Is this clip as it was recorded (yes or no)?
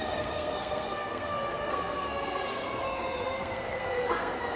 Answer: no